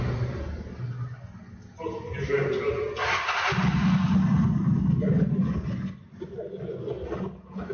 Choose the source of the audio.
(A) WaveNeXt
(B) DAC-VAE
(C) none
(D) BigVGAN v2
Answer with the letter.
C